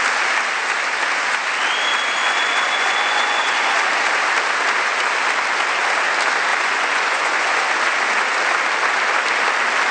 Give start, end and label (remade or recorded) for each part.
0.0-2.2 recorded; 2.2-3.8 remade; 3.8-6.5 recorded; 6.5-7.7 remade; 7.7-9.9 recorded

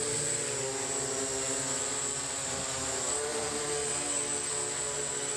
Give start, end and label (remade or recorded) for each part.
0.0-5.4 recorded

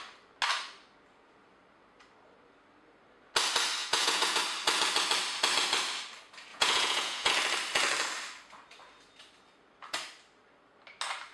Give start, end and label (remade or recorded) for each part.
0.0-3.8 recorded; 3.8-4.4 remade; 4.4-6.5 recorded; 6.5-7.3 remade; 7.3-11.3 recorded

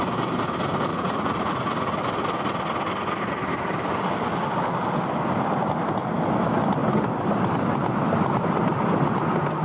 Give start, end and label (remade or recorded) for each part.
0.0-0.9 recorded; 0.9-1.9 remade; 1.9-9.6 recorded

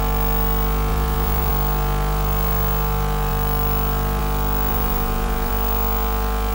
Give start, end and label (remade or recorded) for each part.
0.0-0.9 recorded; 0.9-1.5 remade; 1.5-4.7 recorded; 4.7-5.5 remade; 5.5-6.5 recorded